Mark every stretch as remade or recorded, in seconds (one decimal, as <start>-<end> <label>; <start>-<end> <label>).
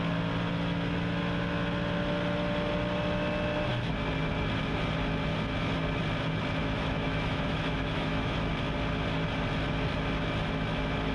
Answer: 0.0-6.6 recorded; 6.6-8.5 remade; 8.5-11.1 recorded